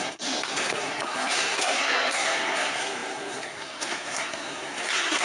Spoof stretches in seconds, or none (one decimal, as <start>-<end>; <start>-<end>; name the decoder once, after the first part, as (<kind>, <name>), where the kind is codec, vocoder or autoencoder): 0.0-5.2 (codec, SNAC)